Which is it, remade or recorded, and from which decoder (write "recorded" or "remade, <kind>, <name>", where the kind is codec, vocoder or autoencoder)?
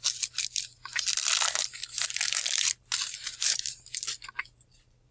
recorded